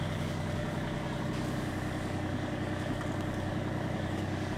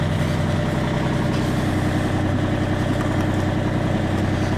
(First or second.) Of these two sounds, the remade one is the first